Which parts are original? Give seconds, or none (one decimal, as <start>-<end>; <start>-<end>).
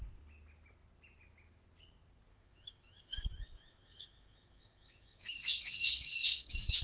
0.0-2.3